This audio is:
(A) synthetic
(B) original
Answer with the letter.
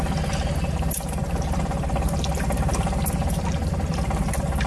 B